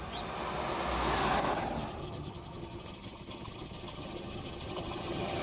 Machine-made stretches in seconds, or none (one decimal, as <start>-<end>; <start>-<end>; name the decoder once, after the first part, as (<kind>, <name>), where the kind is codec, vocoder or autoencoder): 2.0-5.4 (vocoder, HiFi-GAN)